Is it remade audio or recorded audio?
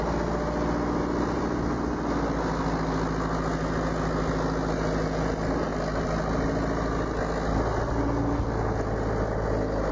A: recorded